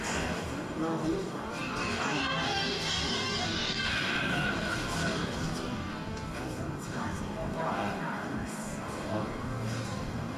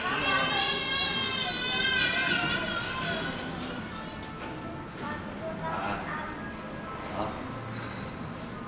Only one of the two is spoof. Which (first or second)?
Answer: first